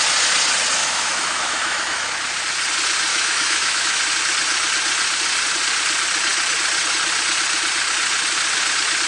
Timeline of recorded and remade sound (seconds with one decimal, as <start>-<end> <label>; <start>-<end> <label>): 0.0-0.8 recorded; 0.8-2.1 remade; 2.1-3.1 recorded; 3.1-4.0 remade; 4.0-9.1 recorded